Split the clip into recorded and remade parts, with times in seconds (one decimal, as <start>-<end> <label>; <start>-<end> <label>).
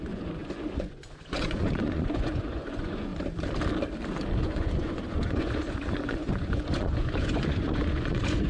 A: 0.0-3.1 remade; 3.1-4.4 recorded; 4.4-8.5 remade